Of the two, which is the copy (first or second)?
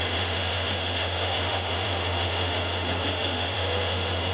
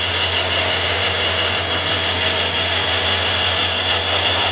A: first